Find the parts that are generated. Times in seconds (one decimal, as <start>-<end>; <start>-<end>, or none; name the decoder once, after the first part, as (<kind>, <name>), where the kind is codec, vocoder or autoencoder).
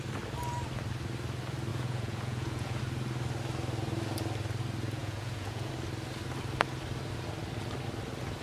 1.7-2.8 (vocoder, Vocos); 5.0-5.7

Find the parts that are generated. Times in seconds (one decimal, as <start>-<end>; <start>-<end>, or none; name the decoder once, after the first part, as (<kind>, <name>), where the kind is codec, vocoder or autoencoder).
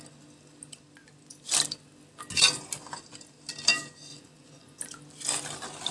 4.1-4.8 (vocoder, Vocos)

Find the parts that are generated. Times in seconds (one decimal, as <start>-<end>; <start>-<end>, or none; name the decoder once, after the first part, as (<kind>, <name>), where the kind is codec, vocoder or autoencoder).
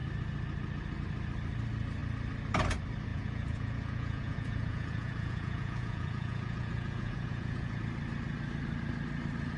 3.1-7.8 (vocoder, Vocos)